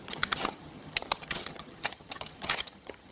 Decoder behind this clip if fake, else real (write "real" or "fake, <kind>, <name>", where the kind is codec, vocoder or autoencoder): fake, vocoder, HiFi-GAN